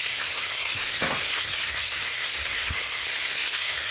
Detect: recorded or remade remade